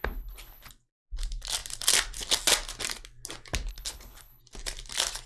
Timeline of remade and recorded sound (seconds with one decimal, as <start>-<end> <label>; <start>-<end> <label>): 0.0-0.7 remade; 0.7-3.7 recorded; 3.7-4.4 remade; 4.4-5.3 recorded